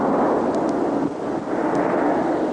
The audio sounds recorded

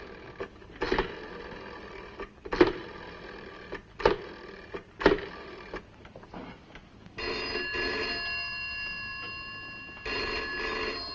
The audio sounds recorded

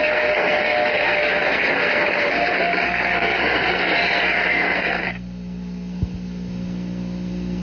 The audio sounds remade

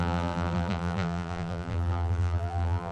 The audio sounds remade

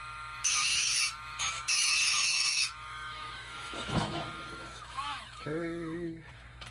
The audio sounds remade